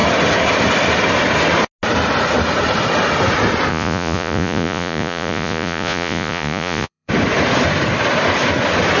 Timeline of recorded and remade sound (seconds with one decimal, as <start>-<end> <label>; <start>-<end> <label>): 0.0-3.7 recorded; 3.7-7.1 remade; 7.1-9.0 recorded

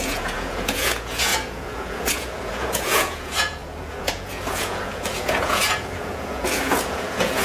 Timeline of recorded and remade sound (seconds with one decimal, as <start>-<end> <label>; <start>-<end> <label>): 0.0-7.4 remade

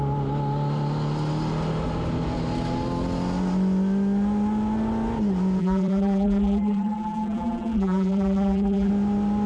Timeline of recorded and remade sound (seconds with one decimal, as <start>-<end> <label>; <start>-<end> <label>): 0.0-5.6 recorded; 5.6-8.9 remade; 8.9-9.5 recorded

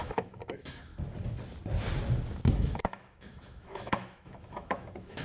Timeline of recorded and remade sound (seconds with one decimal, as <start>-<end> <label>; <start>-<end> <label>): 0.0-0.9 remade; 0.9-2.5 recorded; 2.5-5.2 remade

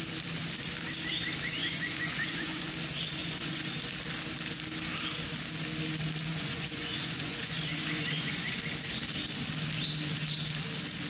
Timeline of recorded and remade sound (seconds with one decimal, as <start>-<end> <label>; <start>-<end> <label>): 0.0-1.6 recorded; 1.6-2.7 remade; 2.7-3.2 recorded; 3.2-3.7 remade; 3.7-6.3 recorded; 6.3-8.6 remade; 8.6-11.1 recorded

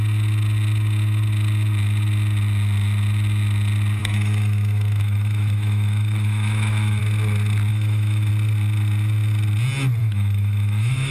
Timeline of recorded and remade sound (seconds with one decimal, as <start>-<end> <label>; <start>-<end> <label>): 0.0-4.0 recorded; 4.0-7.0 remade; 7.0-7.7 recorded; 7.7-8.3 remade; 8.3-10.0 recorded; 10.0-11.1 remade